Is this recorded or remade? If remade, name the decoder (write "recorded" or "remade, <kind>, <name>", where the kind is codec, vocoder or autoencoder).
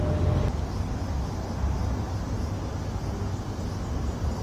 recorded